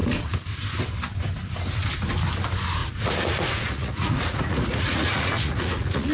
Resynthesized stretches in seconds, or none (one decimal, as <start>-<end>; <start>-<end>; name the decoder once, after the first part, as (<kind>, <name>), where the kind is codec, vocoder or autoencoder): 2.8-6.1 (vocoder, Vocos)